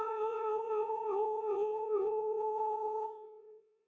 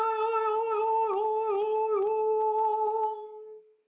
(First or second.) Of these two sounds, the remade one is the first